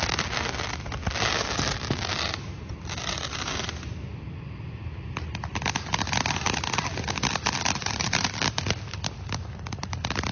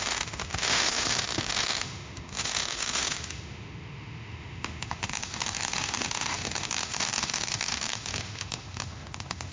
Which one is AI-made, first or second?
second